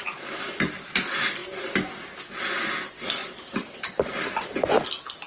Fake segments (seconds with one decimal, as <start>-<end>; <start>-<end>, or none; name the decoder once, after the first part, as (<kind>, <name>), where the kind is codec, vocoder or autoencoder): 3.2-4.7 (vocoder, BigVGAN v2)